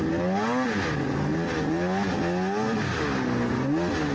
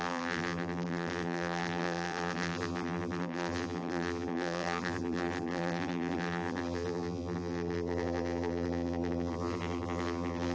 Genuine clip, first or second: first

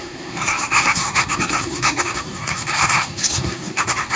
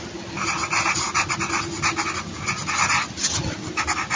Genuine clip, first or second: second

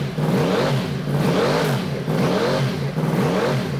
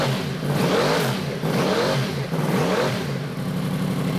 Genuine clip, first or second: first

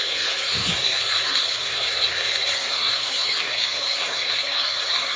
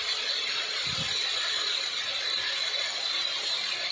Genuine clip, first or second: second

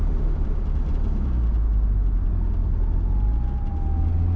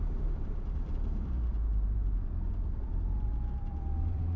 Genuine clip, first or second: first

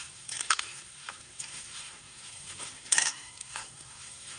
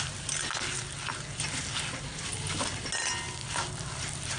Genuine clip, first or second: second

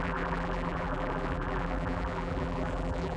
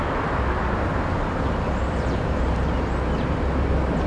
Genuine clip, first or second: second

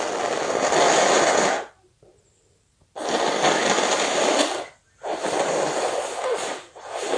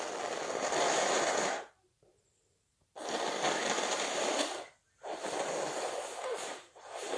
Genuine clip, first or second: first